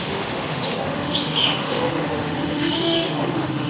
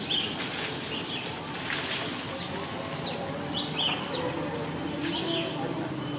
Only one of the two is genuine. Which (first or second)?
second